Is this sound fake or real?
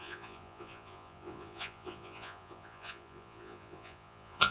fake